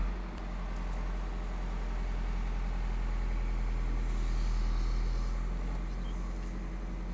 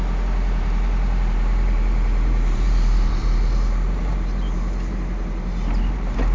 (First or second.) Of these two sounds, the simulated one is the second